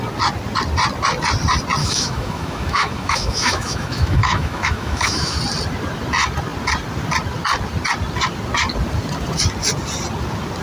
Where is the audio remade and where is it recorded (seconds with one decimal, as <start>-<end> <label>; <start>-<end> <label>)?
0.0-1.8 recorded; 1.8-5.4 remade; 5.4-10.6 recorded